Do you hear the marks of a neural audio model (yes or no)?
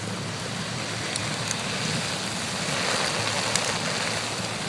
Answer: no